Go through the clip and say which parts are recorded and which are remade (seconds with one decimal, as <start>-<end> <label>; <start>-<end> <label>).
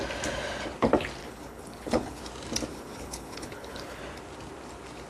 0.0-1.2 recorded; 1.2-2.2 remade; 2.2-2.7 recorded; 2.7-4.0 remade; 4.0-5.1 recorded